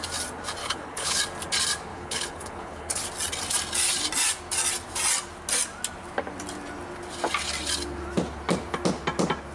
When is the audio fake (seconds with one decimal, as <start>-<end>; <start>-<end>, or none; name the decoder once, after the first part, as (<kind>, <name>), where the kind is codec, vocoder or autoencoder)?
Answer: 0.6-1.2 (codec, HILCodec); 1.9-3.0